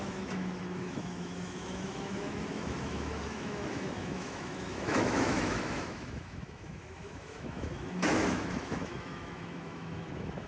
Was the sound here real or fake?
fake